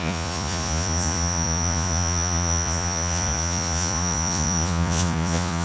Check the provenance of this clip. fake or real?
fake